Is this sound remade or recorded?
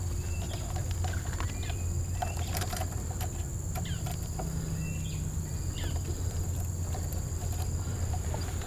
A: recorded